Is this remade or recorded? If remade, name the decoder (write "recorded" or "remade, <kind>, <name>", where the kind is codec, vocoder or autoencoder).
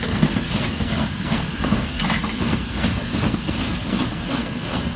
remade, codec, SNAC